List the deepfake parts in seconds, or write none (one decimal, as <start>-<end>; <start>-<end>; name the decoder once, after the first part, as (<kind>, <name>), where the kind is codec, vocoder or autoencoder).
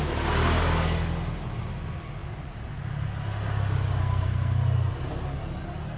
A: 4.0-4.6 (codec, SNAC)